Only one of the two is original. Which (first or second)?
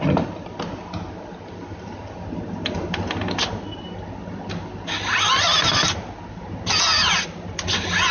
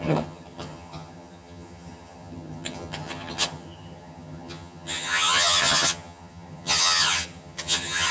first